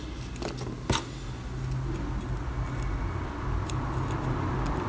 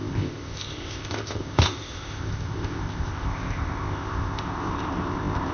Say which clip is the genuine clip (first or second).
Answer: first